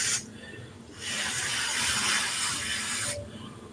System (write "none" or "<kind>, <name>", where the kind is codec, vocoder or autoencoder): vocoder, BigVGAN v2